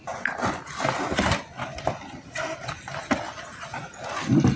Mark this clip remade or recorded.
recorded